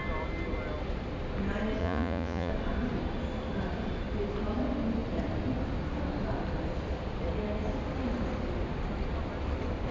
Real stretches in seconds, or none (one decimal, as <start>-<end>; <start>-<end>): 0.0-1.8; 2.5-9.9